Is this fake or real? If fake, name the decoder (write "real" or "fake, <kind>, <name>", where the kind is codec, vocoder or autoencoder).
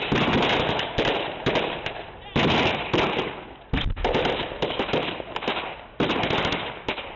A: real